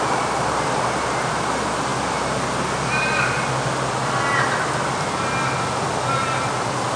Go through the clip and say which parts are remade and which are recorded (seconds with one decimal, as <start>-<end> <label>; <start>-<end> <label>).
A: 0.0-7.0 recorded